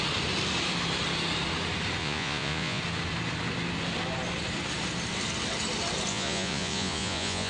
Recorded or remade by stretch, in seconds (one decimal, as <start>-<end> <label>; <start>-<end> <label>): 0.0-2.0 recorded; 2.0-2.8 remade; 2.8-6.1 recorded; 6.1-7.5 remade